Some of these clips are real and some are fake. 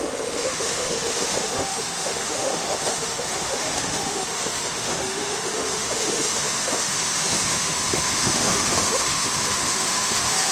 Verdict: fake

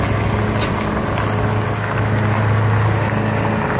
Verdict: real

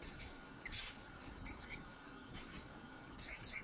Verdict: fake